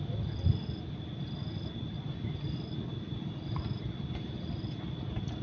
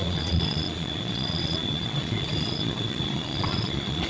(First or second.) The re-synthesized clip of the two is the second